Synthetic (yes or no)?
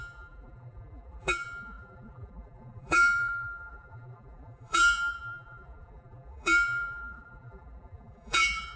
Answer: yes